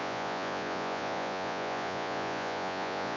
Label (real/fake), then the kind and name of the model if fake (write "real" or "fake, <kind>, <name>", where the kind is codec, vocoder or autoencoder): fake, vocoder, Vocos